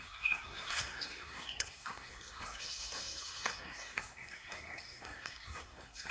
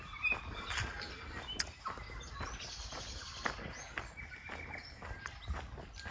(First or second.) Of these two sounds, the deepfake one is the first